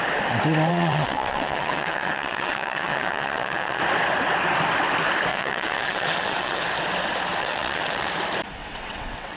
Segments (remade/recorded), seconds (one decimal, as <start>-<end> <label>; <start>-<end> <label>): 0.0-0.7 recorded; 0.7-3.8 remade; 3.8-5.3 recorded; 5.3-6.6 remade; 6.6-7.4 recorded; 7.4-8.1 remade; 8.1-8.6 recorded; 8.6-9.4 remade